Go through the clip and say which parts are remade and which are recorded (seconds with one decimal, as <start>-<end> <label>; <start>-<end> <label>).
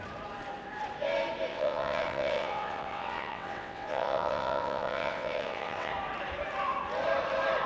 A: 0.0-1.5 recorded; 1.5-5.9 remade; 5.9-7.7 recorded